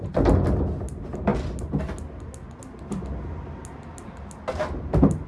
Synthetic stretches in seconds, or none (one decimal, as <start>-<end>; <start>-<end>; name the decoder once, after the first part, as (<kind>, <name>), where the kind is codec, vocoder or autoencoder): none